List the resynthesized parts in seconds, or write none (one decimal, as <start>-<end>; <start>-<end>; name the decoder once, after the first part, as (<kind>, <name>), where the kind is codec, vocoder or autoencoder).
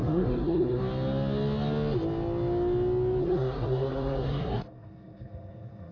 0.0-0.8 (codec, SNAC); 3.2-5.9